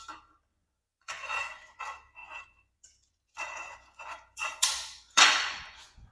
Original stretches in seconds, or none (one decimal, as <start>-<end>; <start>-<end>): 0.0-0.5; 1.8-2.2